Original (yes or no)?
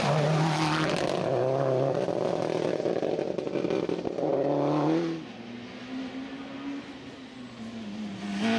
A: yes